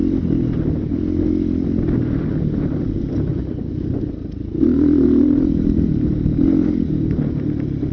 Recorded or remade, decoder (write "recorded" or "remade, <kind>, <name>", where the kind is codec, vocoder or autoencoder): recorded